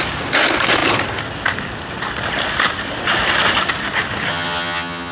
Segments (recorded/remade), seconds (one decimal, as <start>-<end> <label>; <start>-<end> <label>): 0.0-4.3 recorded; 4.3-5.1 remade